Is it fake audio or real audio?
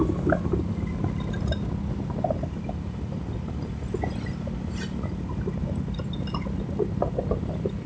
real